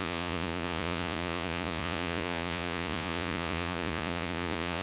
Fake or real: fake